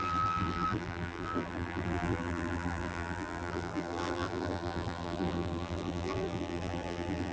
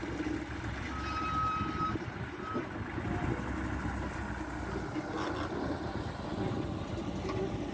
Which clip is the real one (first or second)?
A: second